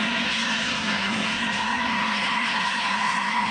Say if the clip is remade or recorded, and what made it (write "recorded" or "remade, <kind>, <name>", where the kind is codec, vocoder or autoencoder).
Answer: remade, codec, SNAC